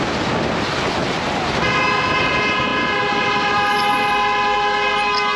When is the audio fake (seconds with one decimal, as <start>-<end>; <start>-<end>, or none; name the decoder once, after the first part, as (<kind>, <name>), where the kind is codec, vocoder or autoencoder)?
none